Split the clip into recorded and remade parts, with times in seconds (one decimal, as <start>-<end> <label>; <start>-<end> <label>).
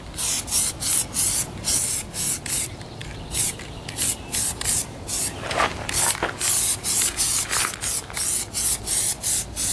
0.0-3.0 recorded; 3.0-6.0 remade; 6.0-6.8 recorded; 6.8-7.6 remade; 7.6-9.7 recorded